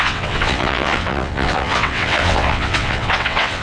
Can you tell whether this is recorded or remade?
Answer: remade